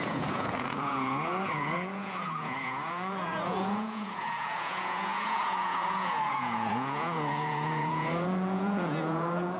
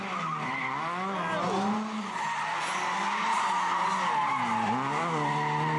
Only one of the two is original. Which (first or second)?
second